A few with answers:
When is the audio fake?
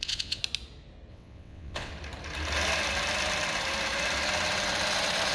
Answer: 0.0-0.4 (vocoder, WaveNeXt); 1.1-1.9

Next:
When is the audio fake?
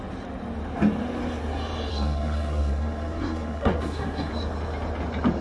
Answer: 1.9-4.3 (codec, SNAC)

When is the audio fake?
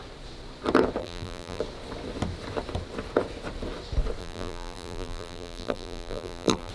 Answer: 1.0-1.6 (vocoder, BigVGAN v2); 4.2-6.7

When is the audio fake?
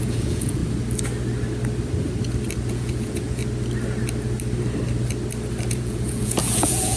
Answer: 0.0-0.6 (vocoder, Vocos); 2.7-3.4; 5.7-7.0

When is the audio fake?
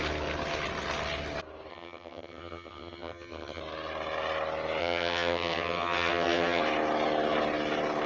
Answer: 1.7-3.6 (vocoder, HiFi-GAN); 4.8-6.6